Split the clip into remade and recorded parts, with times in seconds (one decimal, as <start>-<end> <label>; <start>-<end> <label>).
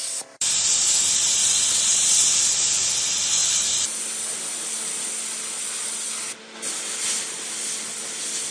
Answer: 0.0-1.4 recorded; 1.4-2.3 remade; 2.3-8.5 recorded